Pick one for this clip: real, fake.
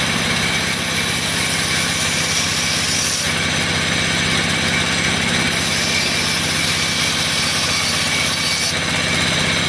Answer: real